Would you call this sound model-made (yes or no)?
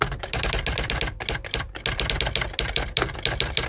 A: no